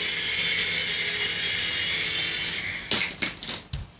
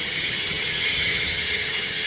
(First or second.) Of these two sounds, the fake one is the second